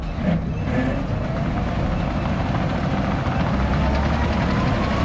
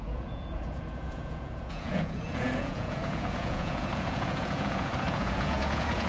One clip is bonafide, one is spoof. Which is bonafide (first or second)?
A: first